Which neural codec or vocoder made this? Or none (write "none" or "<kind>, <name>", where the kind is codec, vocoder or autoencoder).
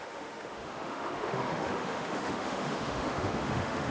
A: autoencoder, DAC-VAE